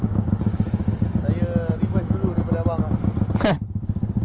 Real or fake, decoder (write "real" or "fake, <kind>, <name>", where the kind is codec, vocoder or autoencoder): real